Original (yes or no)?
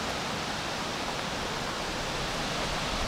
yes